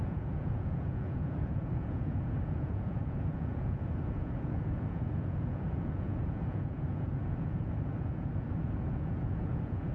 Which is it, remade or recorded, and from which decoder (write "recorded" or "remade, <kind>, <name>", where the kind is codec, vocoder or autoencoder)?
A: remade, vocoder, Vocos